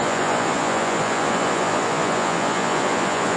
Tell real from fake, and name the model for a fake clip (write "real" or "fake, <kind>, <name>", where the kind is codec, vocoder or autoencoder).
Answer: fake, vocoder, Vocos